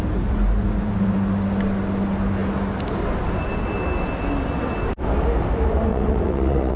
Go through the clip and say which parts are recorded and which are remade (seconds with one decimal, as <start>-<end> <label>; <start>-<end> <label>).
0.0-5.9 recorded; 5.9-6.8 remade